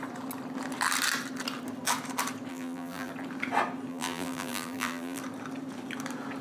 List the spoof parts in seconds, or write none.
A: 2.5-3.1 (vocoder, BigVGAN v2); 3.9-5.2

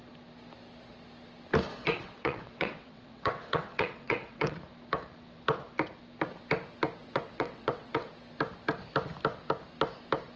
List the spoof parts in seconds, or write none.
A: 1.8-4.6 (vocoder, WaveNeXt); 7.0-8.1